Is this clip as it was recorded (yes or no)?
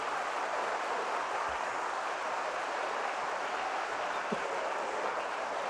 yes